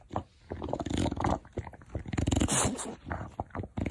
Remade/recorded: recorded